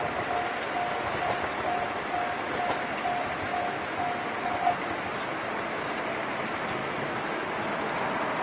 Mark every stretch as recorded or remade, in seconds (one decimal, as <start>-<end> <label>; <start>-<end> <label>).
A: 0.0-3.5 recorded; 3.5-4.5 remade; 4.5-6.8 recorded; 6.8-7.7 remade; 7.7-8.4 recorded